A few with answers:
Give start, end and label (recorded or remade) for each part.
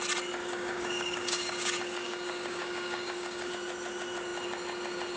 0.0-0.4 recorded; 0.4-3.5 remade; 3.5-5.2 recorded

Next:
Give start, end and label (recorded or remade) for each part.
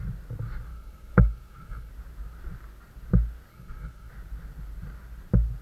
0.0-0.7 recorded; 0.7-1.9 remade; 1.9-3.5 recorded; 3.5-4.1 remade; 4.1-5.6 recorded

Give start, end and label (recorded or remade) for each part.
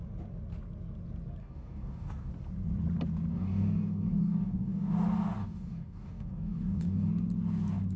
0.0-1.4 recorded; 1.4-2.3 remade; 2.3-3.3 recorded; 3.3-4.9 remade; 4.9-5.4 recorded; 5.4-7.1 remade; 7.1-8.0 recorded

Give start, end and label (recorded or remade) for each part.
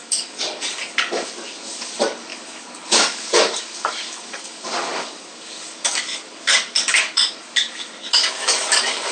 0.0-9.1 remade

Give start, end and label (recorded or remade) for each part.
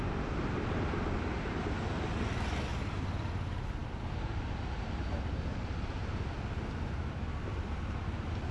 0.0-8.5 recorded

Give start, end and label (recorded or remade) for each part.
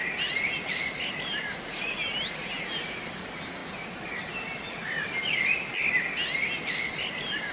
0.0-7.5 recorded